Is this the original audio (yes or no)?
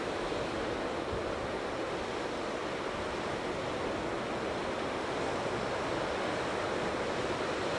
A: yes